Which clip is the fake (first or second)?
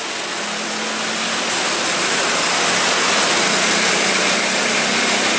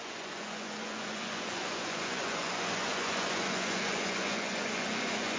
second